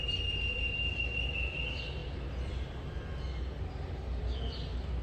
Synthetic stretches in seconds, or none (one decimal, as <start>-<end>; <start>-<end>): none